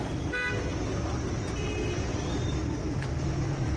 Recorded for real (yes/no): yes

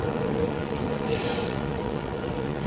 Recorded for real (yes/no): no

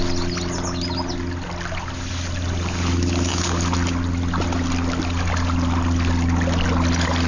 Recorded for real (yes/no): yes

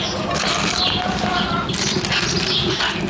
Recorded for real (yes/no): yes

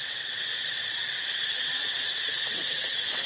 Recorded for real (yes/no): no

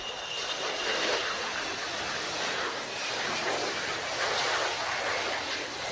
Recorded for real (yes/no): yes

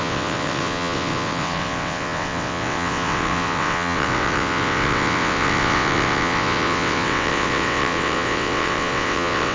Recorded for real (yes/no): no